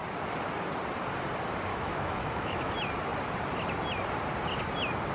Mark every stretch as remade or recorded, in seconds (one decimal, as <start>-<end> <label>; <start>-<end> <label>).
0.0-1.7 recorded; 1.7-2.7 remade; 2.7-5.1 recorded